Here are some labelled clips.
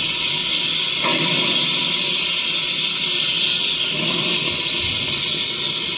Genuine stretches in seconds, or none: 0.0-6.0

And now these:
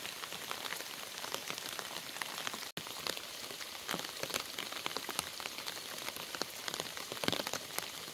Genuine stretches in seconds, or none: 0.0-8.1

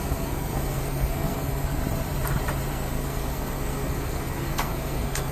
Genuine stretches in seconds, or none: 1.8-2.7